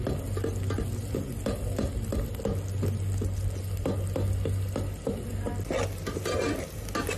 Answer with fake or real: real